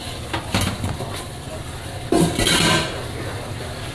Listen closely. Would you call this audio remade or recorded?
recorded